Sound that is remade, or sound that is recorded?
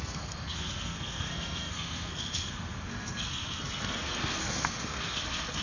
remade